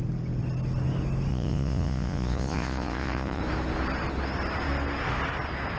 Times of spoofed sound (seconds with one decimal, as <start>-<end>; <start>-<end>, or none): 1.3-3.4